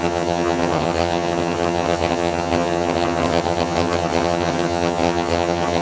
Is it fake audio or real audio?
fake